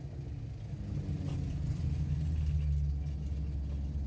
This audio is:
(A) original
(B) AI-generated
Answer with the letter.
A